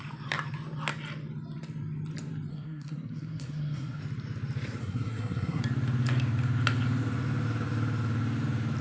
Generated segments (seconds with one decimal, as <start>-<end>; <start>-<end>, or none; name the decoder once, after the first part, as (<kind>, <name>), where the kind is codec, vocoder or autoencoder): 2.5-4.0 (codec, SNAC); 4.8-5.6